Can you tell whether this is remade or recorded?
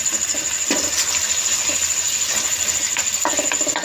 recorded